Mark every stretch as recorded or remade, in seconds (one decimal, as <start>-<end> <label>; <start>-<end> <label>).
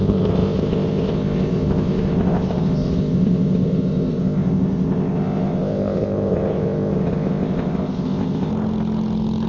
0.0-8.5 remade; 8.5-9.5 recorded